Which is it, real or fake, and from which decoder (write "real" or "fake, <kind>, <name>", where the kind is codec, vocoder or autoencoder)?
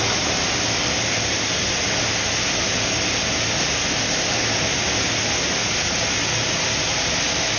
real